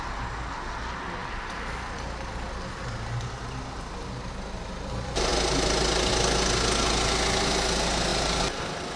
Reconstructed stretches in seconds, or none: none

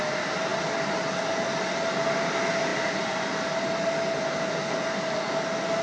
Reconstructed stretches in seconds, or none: 0.5-1.4 (vocoder, BigVGAN v2); 2.7-3.3

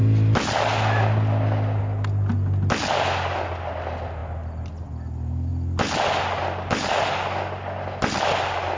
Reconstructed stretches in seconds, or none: none

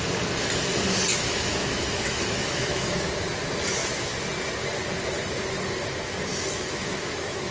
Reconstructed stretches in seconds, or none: 1.1-3.1 (autoencoder, DAC-VAE); 6.3-7.5

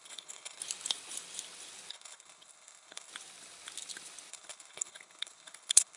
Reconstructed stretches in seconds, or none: 0.0-0.6 (codec, HILCodec); 1.9-3.1; 4.3-6.0

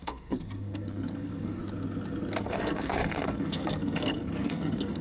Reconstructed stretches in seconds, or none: 0.0-1.6 (codec, SNAC); 2.4-5.0

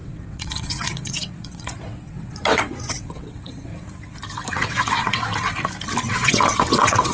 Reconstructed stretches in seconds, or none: 0.0-3.7 (vocoder, WaveNeXt); 4.5-5.3; 6.1-7.1